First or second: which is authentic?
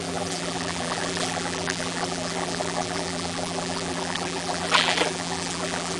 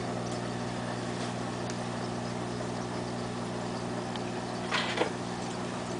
second